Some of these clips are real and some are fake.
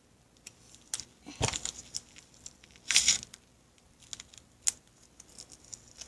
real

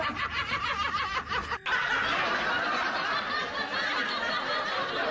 real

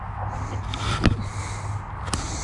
real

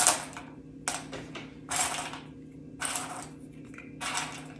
real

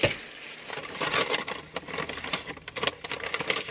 real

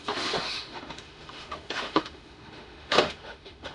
fake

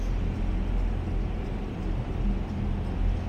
real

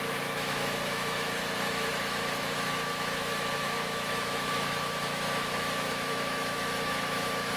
fake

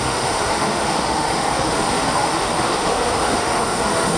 fake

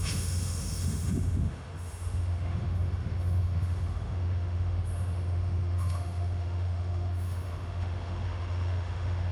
fake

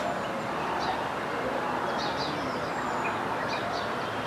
real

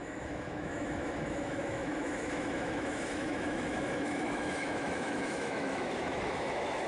fake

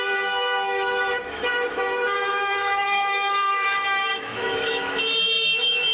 fake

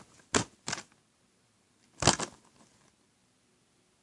real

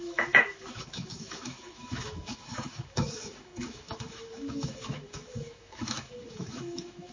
fake